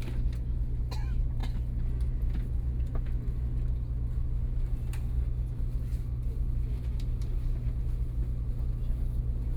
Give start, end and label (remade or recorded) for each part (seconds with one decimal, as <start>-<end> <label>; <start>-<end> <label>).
0.0-9.6 recorded